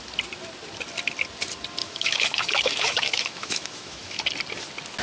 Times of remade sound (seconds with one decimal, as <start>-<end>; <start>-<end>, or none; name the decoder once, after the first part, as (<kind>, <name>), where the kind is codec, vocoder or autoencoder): 1.8-4.2 (autoencoder, DAC-VAE)